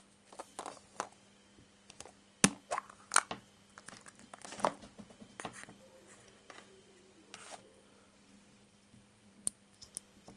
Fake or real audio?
real